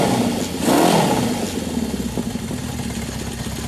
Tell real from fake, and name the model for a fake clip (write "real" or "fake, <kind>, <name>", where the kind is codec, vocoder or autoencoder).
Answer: real